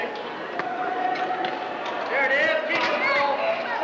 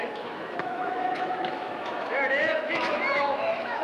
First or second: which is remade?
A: second